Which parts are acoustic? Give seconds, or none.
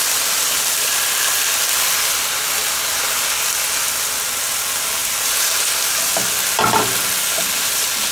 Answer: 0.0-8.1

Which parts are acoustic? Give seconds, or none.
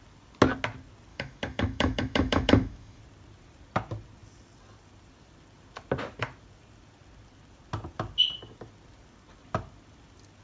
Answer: 0.0-1.1; 3.0-10.4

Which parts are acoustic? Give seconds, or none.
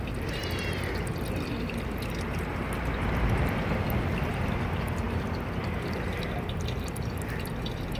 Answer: 0.0-8.0